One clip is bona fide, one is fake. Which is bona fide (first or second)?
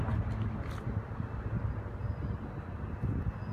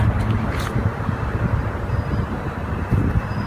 first